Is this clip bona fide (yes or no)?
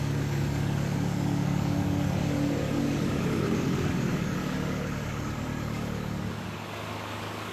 no